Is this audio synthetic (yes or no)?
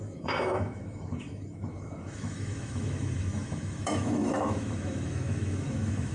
yes